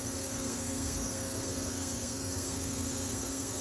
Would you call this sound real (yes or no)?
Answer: no